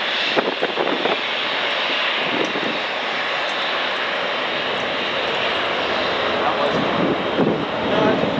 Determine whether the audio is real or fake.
real